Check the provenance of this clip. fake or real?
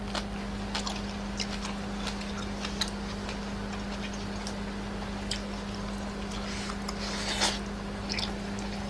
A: real